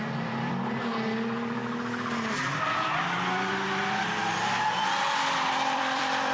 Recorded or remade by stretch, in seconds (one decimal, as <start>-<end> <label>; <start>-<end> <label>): 0.0-1.6 remade; 1.6-2.6 recorded; 2.6-6.3 remade